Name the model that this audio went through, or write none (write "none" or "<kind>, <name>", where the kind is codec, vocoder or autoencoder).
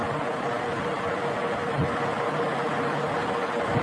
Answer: none